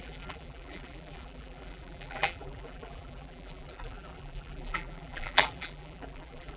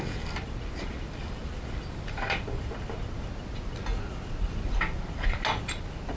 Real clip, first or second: second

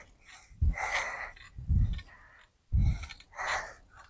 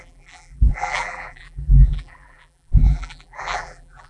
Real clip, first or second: first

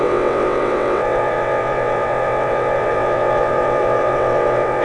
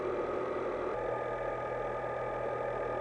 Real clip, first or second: second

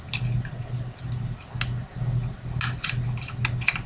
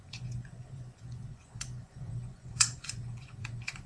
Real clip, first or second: first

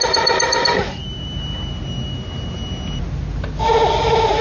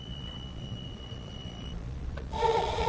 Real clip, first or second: first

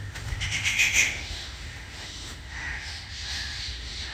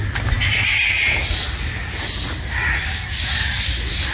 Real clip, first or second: second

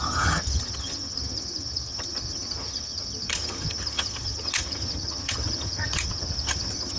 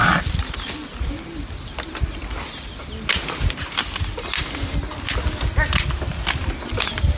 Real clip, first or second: second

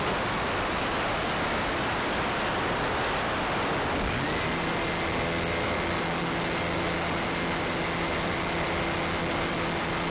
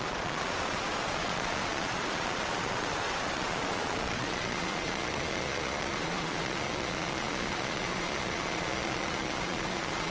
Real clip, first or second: first